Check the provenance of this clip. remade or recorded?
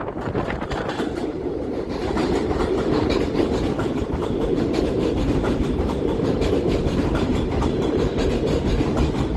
remade